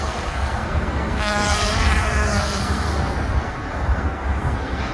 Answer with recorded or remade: remade